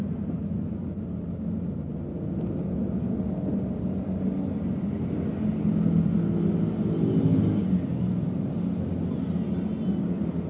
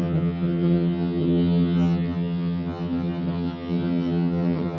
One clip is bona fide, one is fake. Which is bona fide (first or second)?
first